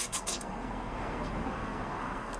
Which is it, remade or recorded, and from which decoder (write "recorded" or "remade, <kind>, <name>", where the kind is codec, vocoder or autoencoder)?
remade, codec, SNAC